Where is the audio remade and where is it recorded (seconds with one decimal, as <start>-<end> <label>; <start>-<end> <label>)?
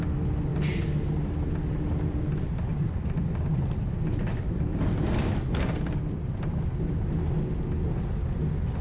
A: 0.0-2.7 recorded; 2.7-6.9 remade; 6.9-8.8 recorded